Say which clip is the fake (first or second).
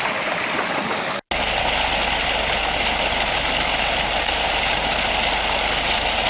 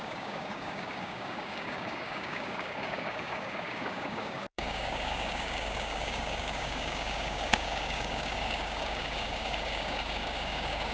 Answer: second